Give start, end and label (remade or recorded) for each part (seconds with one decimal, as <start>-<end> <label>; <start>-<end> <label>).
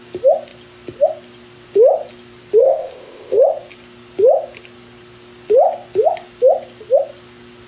0.0-2.6 recorded; 2.6-3.4 remade; 3.4-7.7 recorded